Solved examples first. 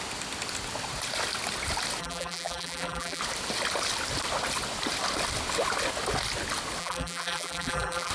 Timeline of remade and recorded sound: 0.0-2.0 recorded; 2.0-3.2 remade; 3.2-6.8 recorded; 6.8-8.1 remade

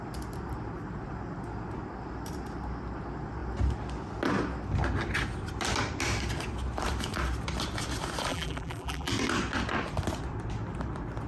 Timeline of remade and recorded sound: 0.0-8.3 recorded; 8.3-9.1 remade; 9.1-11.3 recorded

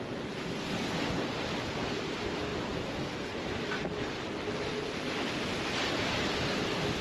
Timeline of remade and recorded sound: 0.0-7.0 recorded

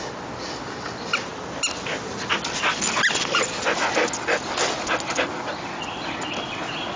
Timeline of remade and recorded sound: 0.0-7.0 recorded

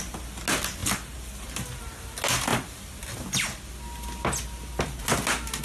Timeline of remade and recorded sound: 0.0-5.6 recorded

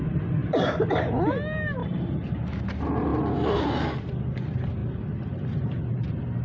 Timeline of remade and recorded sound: 0.0-0.4 recorded; 0.4-1.1 remade; 1.1-1.8 recorded; 1.8-2.6 remade; 2.6-4.8 recorded; 4.8-5.8 remade; 5.8-6.4 recorded